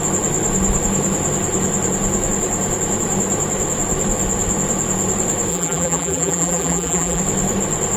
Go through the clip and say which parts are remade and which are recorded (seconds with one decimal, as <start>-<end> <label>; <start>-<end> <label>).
0.0-5.5 recorded; 5.5-7.2 remade; 7.2-8.0 recorded